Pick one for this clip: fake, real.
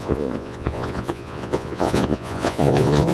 fake